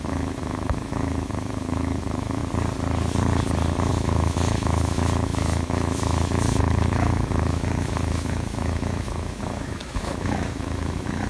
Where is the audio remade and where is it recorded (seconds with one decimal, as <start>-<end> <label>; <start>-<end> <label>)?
0.0-2.4 remade; 2.4-3.9 recorded; 3.9-11.3 remade

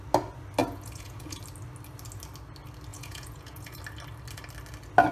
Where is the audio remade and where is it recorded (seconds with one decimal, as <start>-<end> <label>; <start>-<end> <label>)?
0.0-0.6 recorded; 0.6-1.4 remade; 1.4-2.9 recorded; 2.9-3.8 remade; 3.8-5.1 recorded

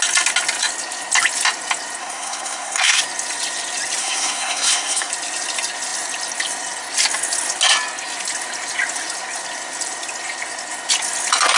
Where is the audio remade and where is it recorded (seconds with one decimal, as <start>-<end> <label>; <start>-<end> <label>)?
0.0-2.0 recorded; 2.0-3.0 remade; 3.0-4.0 recorded; 4.0-5.1 remade; 5.1-11.6 recorded

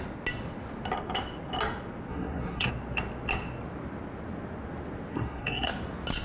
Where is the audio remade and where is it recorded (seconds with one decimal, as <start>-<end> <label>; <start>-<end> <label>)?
0.0-2.1 recorded; 2.1-2.7 remade; 2.7-5.1 recorded; 5.1-5.7 remade; 5.7-6.2 recorded

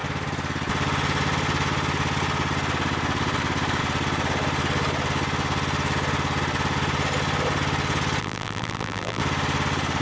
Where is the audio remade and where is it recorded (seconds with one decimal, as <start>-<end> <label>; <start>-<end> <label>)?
0.0-8.2 recorded; 8.2-9.2 remade; 9.2-10.0 recorded

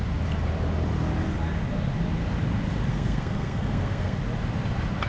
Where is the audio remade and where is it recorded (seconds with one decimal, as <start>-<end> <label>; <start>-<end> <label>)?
0.0-2.9 recorded; 2.9-4.2 remade; 4.2-5.1 recorded